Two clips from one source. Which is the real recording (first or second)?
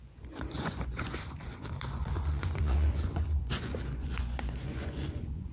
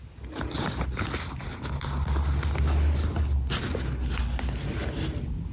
second